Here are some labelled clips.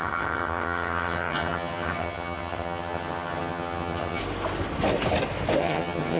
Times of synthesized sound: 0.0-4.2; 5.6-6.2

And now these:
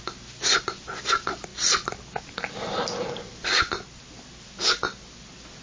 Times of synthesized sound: none

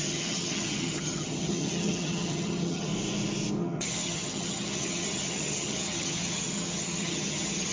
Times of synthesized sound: 0.0-2.9; 3.6-7.7